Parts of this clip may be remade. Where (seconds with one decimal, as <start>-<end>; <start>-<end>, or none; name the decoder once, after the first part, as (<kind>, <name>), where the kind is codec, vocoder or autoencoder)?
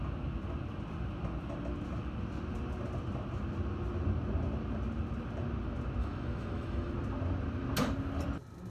6.0-6.9 (autoencoder, DAC-VAE)